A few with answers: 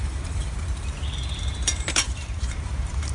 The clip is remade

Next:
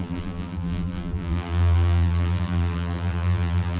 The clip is remade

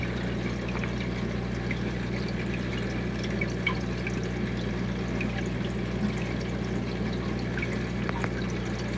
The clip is recorded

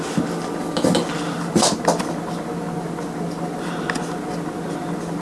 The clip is recorded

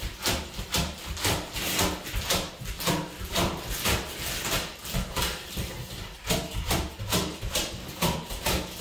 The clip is recorded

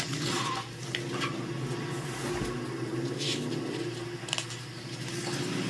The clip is remade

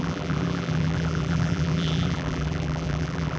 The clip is remade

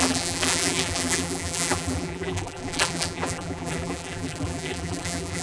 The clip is remade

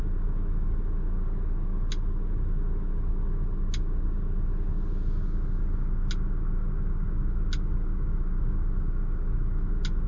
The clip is recorded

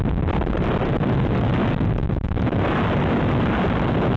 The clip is recorded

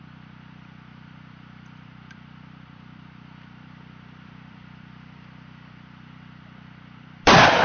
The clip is remade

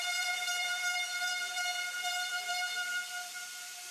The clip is remade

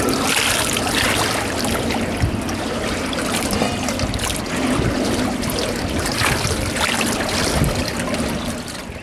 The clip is recorded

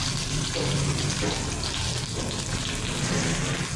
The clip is recorded